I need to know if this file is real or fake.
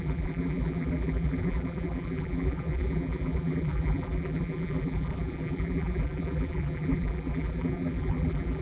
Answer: fake